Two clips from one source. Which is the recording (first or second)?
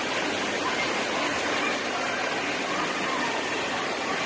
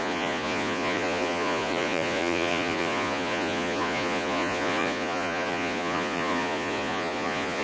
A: first